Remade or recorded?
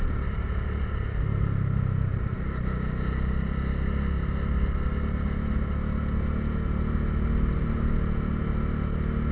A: recorded